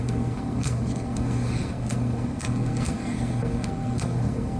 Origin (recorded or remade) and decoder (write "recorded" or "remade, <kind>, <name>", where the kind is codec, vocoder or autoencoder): remade, codec, SNAC